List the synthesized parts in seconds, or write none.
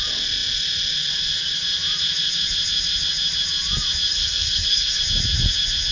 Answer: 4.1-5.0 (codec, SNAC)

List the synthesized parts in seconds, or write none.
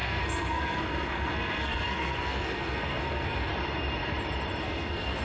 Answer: 0.0-3.5 (codec, SNAC); 4.6-5.2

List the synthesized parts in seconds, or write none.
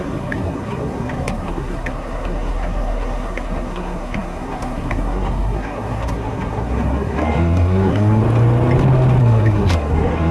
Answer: 0.0-8.2 (codec, SNAC); 9.2-10.3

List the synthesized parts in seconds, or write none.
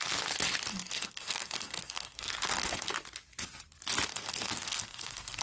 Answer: 0.7-2.9 (codec, SNAC); 4.1-5.4